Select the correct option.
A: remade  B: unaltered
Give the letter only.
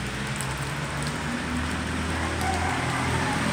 B